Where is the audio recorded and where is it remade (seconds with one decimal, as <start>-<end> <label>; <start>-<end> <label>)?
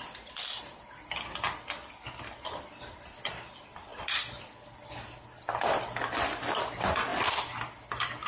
0.0-8.3 recorded